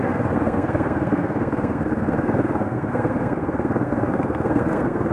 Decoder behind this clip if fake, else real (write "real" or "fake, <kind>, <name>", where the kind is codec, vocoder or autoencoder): fake, codec, SNAC